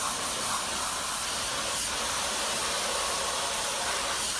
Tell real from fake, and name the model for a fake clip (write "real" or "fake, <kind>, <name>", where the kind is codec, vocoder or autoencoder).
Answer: real